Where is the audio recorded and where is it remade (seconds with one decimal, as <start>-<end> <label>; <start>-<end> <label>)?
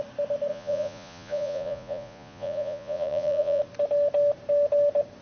0.0-0.5 recorded; 0.5-3.6 remade; 3.6-5.2 recorded